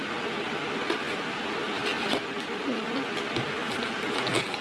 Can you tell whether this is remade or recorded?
recorded